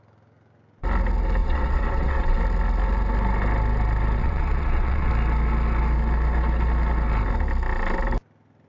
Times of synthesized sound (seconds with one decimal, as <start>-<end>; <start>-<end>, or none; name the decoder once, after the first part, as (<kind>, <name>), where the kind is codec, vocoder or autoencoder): 1.4-2.4 (vocoder, WaveNeXt); 4.2-5.1